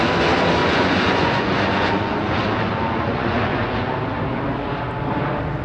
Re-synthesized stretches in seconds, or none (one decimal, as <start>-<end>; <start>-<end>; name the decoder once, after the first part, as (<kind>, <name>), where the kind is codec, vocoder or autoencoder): 0.6-4.0 (vocoder, Vocos)

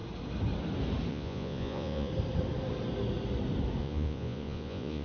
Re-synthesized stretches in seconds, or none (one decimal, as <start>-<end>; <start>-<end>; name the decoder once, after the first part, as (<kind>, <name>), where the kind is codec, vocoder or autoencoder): 1.1-2.1 (vocoder, Vocos); 3.8-5.0

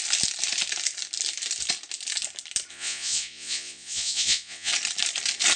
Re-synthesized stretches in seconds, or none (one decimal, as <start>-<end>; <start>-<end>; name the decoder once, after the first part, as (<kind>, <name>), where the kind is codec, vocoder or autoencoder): 2.7-4.7 (vocoder, Vocos)

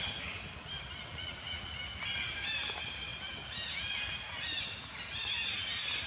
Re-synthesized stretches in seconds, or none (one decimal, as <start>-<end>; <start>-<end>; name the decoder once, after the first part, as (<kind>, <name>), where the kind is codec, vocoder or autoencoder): 1.1-1.7 (vocoder, Vocos)

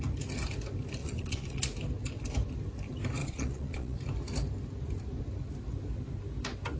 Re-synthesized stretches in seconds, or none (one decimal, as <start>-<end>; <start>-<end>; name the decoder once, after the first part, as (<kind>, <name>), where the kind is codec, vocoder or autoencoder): 1.0-1.6 (vocoder, Vocos); 3.2-4.0

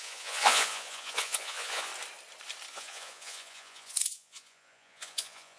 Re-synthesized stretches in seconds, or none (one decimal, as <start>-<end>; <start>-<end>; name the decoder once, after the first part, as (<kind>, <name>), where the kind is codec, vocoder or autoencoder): 0.0-1.9 (vocoder, Vocos); 2.7-5.6

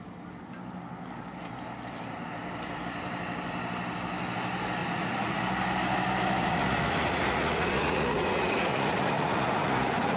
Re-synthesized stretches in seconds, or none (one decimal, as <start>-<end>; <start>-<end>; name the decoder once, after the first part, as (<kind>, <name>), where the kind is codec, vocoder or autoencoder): 4.8-5.4 (vocoder, Vocos); 6.4-10.2